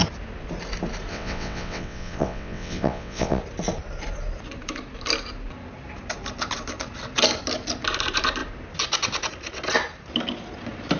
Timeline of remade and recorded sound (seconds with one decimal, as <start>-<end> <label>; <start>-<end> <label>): 0.0-1.1 recorded; 1.1-3.4 remade; 3.4-11.0 recorded